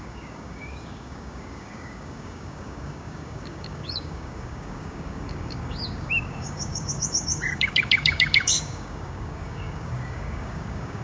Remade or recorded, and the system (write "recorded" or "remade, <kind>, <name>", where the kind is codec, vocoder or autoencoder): remade, codec, DAC